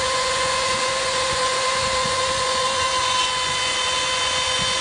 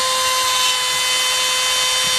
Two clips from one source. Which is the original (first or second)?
second